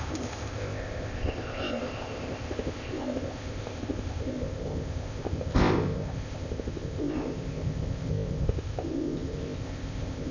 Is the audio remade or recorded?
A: remade